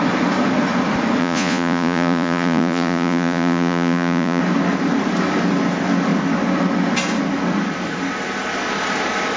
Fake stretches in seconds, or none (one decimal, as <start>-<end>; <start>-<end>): 1.2-4.4